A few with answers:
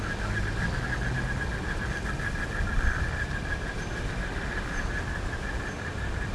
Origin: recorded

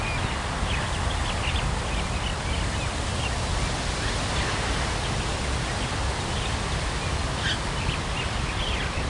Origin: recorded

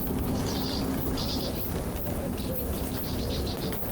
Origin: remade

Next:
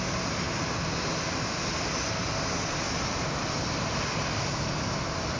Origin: recorded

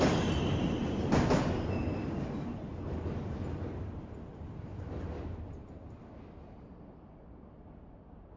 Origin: recorded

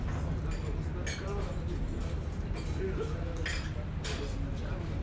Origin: recorded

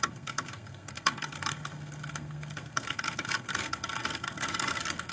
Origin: remade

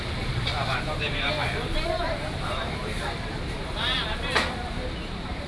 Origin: remade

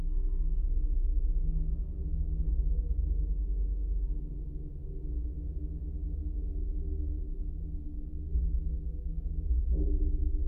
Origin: recorded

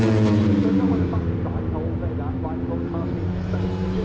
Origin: recorded